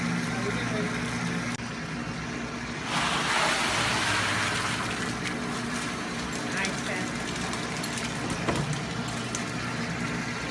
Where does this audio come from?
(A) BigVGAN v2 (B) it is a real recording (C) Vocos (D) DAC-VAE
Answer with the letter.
B